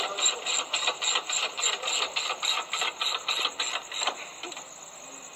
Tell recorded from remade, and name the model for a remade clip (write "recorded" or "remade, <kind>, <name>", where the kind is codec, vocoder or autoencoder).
recorded